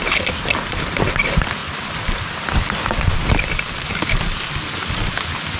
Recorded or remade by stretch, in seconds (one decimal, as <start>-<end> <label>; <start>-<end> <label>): 0.0-1.6 recorded; 1.6-4.6 remade; 4.6-5.6 recorded